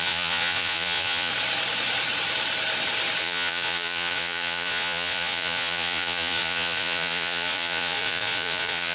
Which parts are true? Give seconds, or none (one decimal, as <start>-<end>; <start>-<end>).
1.3-3.2